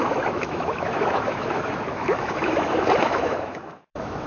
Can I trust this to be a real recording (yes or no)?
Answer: no